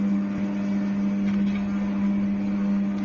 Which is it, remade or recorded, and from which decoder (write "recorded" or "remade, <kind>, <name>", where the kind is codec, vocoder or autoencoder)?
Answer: recorded